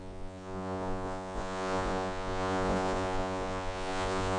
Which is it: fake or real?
fake